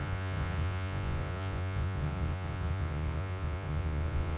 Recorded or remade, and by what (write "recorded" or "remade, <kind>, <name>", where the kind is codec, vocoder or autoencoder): remade, vocoder, Vocos